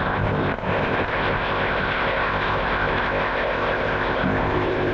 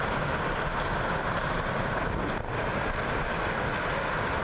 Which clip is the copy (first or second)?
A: first